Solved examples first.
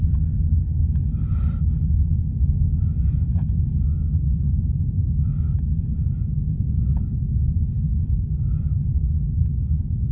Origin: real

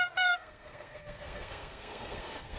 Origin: fake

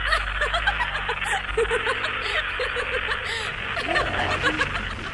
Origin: real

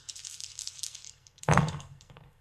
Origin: fake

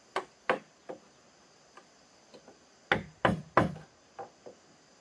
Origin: real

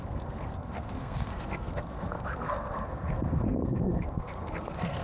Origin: fake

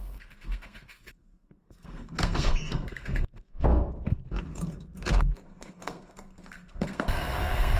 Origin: fake